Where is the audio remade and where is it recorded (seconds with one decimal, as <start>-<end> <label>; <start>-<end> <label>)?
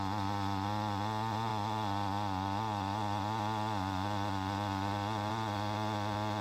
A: 0.0-6.4 recorded